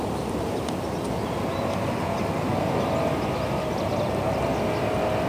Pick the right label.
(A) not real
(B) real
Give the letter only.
B